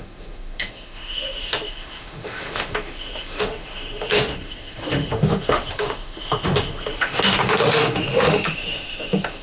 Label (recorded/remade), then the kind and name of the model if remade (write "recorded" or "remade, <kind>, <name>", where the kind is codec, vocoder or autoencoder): remade, autoencoder, DAC-VAE